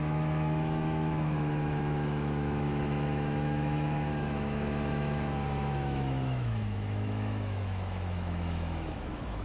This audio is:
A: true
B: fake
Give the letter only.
B